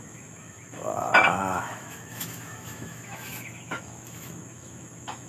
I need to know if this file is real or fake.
fake